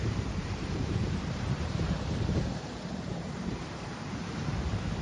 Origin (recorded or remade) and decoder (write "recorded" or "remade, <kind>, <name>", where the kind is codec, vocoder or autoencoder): remade, vocoder, BigVGAN v2